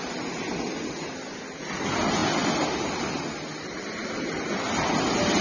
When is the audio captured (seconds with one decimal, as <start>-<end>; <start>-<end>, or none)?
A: 0.0-5.4